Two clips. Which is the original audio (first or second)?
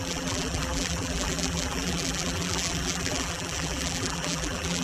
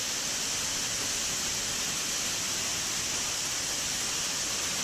second